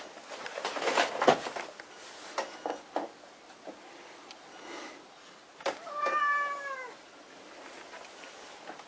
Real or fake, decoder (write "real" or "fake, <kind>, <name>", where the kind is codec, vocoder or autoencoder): real